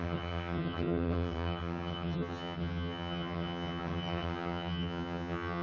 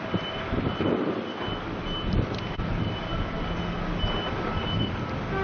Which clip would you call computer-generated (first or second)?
first